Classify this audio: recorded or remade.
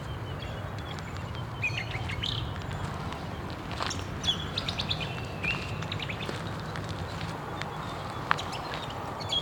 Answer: recorded